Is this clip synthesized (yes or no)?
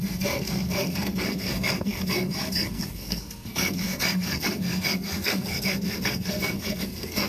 yes